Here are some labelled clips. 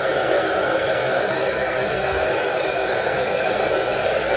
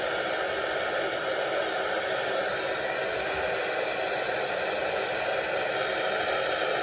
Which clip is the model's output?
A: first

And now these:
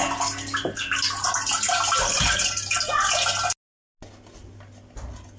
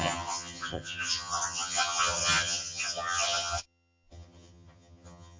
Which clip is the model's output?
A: second